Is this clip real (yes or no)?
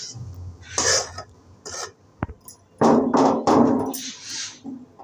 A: yes